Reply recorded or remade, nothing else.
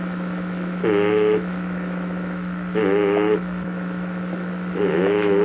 remade